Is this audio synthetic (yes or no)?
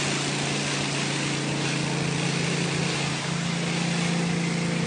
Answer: no